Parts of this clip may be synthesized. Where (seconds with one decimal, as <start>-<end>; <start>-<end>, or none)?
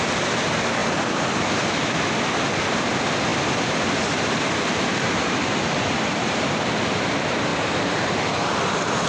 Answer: none